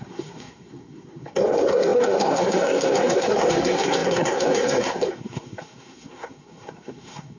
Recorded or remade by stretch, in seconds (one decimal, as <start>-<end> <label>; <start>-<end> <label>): 0.0-7.4 remade